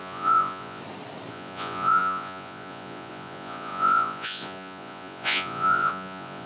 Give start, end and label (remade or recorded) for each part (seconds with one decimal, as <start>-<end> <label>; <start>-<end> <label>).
0.0-0.8 remade; 0.8-1.3 recorded; 1.3-6.5 remade